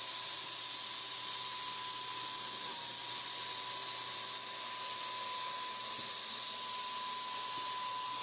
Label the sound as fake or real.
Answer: real